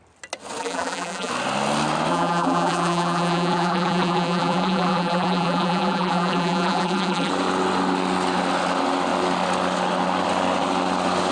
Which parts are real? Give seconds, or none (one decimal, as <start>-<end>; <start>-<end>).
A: 0.0-0.6; 1.3-2.1; 7.3-11.3